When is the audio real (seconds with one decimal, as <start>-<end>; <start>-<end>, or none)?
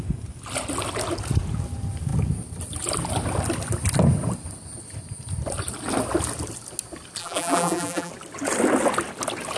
0.0-7.2; 8.1-9.6